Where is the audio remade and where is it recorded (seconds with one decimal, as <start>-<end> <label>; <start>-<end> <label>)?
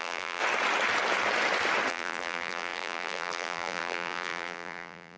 0.0-0.4 remade; 0.4-1.9 recorded; 1.9-5.2 remade